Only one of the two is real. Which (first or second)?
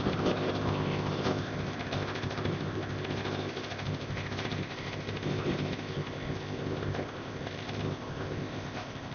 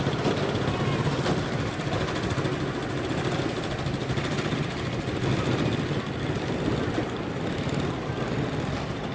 second